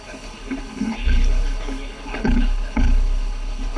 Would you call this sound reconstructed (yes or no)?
yes